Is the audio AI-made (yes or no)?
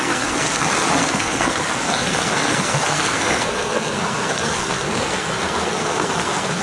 yes